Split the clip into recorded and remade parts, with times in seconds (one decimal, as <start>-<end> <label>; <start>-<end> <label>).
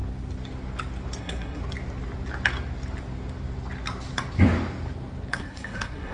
0.0-1.2 recorded; 1.2-1.6 remade; 1.6-5.3 recorded; 5.3-6.1 remade